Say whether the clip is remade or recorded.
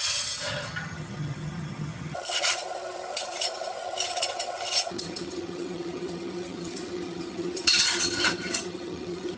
remade